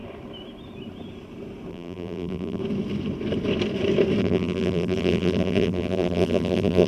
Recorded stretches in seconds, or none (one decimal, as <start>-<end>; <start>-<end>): 0.0-1.7; 2.6-4.2